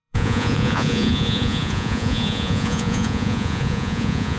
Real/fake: fake